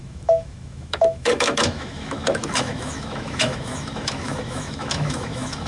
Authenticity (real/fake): fake